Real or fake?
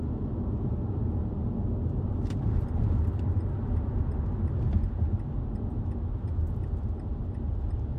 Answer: real